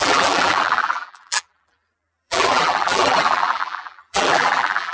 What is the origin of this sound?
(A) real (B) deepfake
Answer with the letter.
B